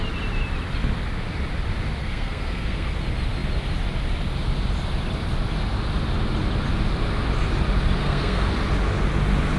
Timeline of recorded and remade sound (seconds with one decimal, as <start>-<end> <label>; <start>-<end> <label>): 0.0-2.0 recorded; 2.0-2.9 remade; 2.9-8.0 recorded; 8.0-8.5 remade; 8.5-9.6 recorded